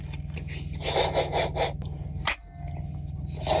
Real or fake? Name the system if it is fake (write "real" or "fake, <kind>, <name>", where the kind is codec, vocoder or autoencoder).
real